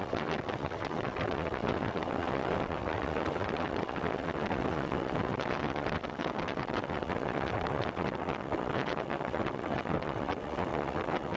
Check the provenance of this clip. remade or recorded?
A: remade